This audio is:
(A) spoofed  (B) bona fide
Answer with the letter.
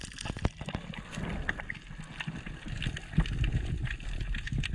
B